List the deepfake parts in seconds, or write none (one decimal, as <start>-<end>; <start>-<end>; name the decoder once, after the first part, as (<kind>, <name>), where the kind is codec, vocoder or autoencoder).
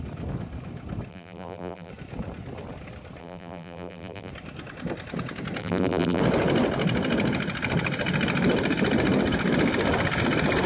1.1-1.9 (vocoder, BigVGAN v2); 3.2-4.3; 5.6-6.2